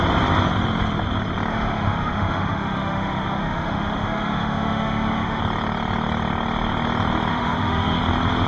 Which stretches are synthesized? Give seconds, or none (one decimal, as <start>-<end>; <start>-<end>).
1.5-5.4; 7.3-8.0